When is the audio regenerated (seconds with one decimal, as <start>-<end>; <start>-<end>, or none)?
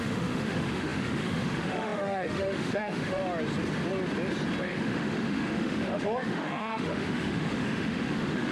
0.0-3.2; 4.6-8.5